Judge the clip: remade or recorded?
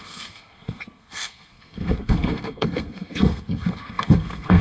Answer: remade